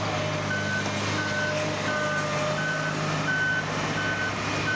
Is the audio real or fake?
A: real